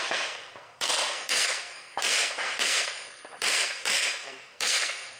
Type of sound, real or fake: fake